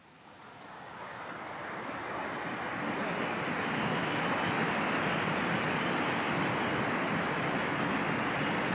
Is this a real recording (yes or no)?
yes